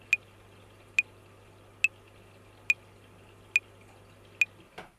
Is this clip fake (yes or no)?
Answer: no